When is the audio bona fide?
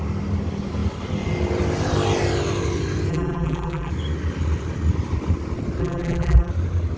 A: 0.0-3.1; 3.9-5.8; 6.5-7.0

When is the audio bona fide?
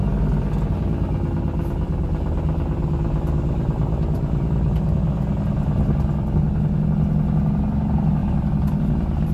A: 0.0-9.3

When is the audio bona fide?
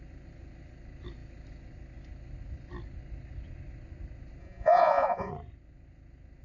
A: 0.0-4.4; 5.3-6.4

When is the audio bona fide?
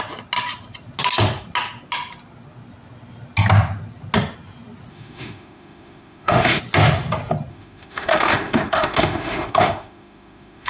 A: 0.0-4.9; 6.6-7.5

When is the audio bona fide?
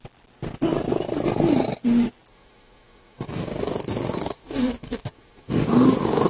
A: 0.0-2.3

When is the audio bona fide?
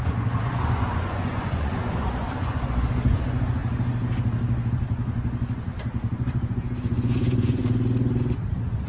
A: 3.6-4.7; 7.6-8.5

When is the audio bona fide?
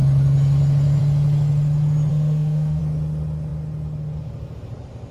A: 0.0-2.1; 2.8-5.1